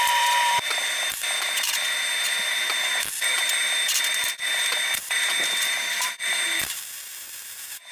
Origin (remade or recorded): remade